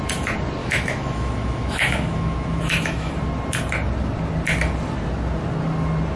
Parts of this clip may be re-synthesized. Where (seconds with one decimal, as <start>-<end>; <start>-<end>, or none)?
0.6-3.1